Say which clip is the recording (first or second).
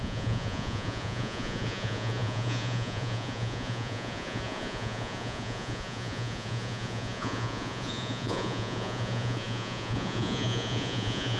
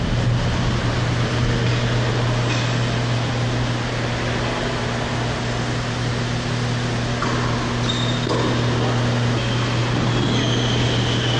second